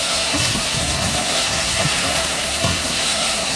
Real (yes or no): no